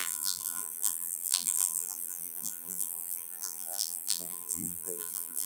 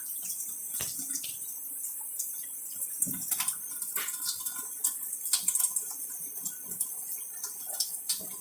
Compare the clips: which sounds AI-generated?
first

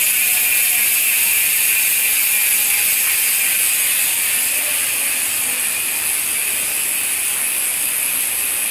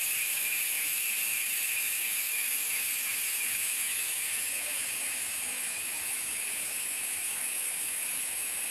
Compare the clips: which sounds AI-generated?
second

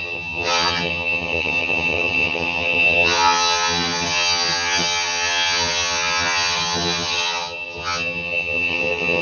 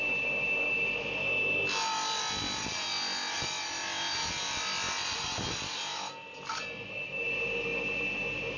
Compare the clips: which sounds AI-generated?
first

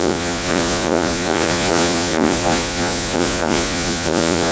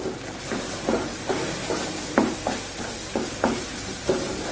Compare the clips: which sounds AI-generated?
first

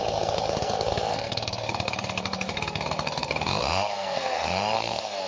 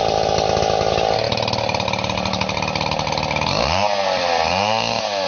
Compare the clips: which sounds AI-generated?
first